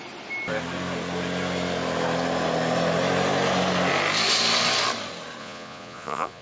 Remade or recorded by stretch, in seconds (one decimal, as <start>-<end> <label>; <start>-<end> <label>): 0.0-5.4 recorded; 5.4-6.4 remade